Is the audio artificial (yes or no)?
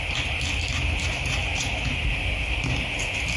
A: no